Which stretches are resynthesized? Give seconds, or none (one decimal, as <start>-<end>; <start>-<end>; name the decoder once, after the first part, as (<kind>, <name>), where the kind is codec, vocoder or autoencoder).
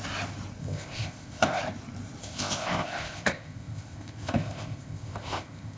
0.6-1.6 (codec, ZipCodec); 2.2-5.8